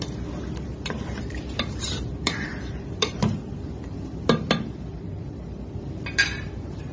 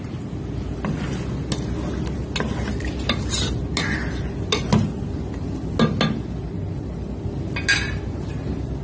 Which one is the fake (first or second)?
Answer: first